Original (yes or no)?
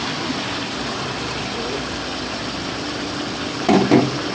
no